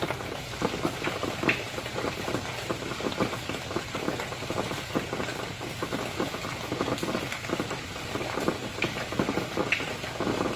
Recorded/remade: recorded